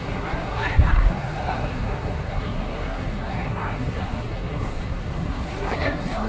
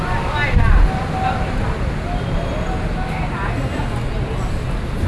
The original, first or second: second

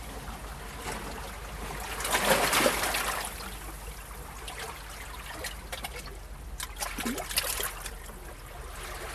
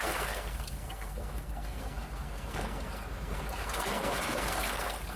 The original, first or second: first